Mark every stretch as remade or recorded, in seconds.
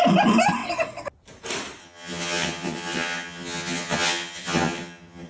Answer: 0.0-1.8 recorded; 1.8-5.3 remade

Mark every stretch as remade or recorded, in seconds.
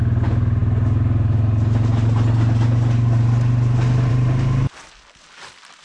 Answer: 0.0-5.8 recorded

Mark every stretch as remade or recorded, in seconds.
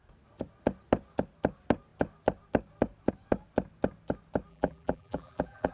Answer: 0.0-4.5 recorded; 4.5-5.7 remade